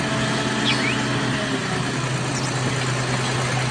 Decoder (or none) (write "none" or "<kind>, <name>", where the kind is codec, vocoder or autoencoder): none